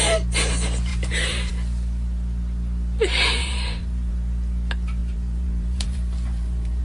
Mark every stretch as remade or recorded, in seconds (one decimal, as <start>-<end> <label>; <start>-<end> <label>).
0.0-0.9 recorded; 0.9-1.5 remade; 1.5-3.4 recorded; 3.4-4.1 remade; 4.1-5.0 recorded; 5.0-6.8 remade